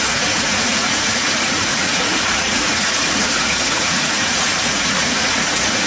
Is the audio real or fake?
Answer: fake